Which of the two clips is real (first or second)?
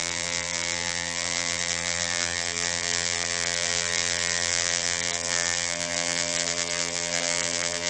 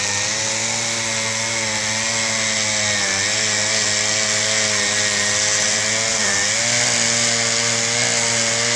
second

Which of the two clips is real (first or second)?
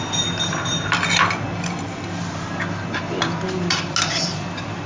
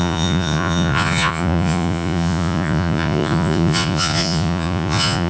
first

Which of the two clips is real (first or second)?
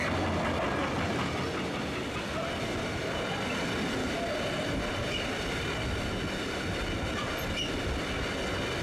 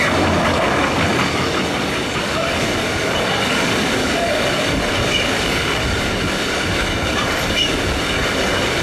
first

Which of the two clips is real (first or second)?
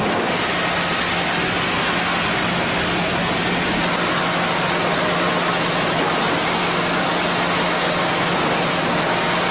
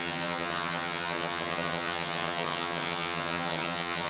first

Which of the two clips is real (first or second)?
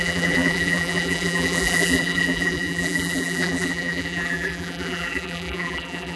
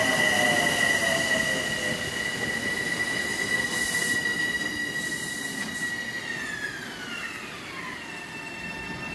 second